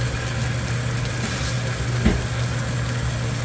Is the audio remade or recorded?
recorded